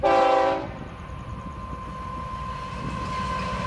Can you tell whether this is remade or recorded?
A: recorded